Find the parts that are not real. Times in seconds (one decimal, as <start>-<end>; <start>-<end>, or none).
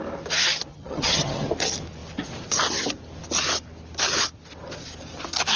0.7-1.5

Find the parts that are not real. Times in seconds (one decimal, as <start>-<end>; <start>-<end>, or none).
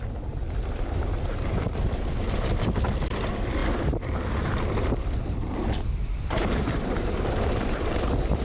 0.0-8.4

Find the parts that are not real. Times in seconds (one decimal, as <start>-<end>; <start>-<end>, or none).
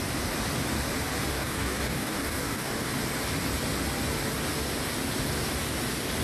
1.3-2.9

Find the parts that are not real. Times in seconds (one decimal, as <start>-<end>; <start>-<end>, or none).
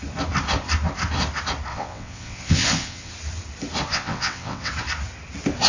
1.7-3.1; 3.9-4.7